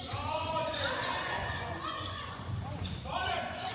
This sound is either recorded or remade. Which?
remade